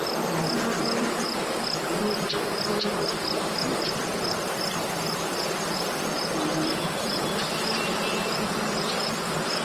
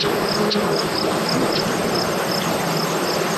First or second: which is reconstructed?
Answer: first